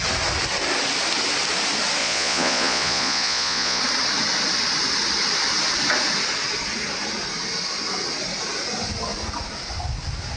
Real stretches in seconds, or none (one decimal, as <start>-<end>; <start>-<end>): 0.0-2.0; 3.8-10.4